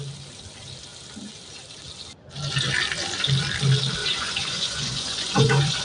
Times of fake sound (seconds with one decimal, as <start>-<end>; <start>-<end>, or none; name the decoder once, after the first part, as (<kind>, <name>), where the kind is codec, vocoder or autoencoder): 4.0-5.8 (vocoder, Vocos)